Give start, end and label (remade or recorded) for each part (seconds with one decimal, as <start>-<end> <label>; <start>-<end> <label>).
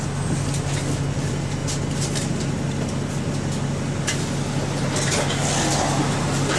0.0-6.6 recorded